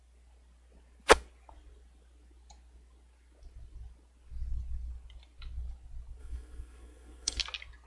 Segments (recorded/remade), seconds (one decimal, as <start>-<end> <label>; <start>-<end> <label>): 0.0-6.2 recorded; 6.2-7.4 remade; 7.4-7.9 recorded